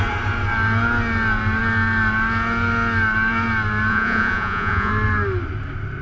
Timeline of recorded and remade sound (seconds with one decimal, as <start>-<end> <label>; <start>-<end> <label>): 0.0-3.9 recorded; 3.9-4.9 remade; 4.9-6.0 recorded